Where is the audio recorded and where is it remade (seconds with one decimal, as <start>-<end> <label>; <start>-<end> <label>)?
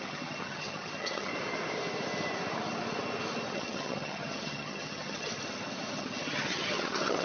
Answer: 0.0-1.3 remade; 1.3-3.5 recorded; 3.5-5.3 remade; 5.3-5.9 recorded; 5.9-7.2 remade